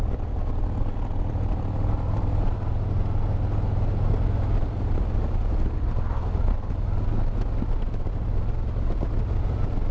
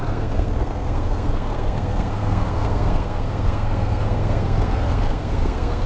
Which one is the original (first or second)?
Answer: first